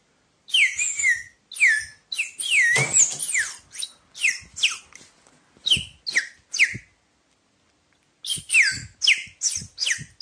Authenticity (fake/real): real